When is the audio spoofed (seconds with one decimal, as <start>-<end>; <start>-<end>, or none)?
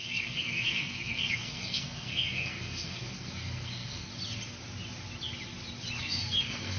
0.0-4.1; 6.0-6.8